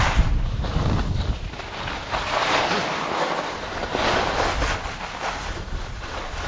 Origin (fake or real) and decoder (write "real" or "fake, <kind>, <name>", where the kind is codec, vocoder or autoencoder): real